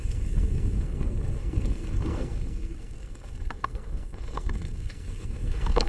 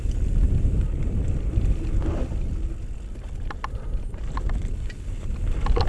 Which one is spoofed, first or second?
first